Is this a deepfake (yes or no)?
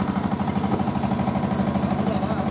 yes